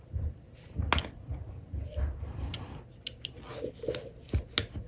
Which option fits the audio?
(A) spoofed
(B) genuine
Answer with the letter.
B